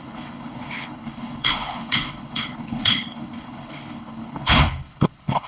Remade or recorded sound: remade